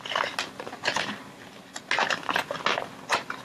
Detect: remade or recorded recorded